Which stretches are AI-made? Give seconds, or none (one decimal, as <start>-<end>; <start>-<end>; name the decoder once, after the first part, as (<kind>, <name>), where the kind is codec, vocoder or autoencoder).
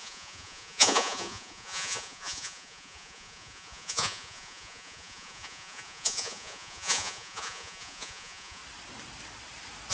0.0-8.6 (vocoder, Vocos)